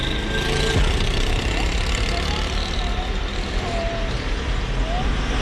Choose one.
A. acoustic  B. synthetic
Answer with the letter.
A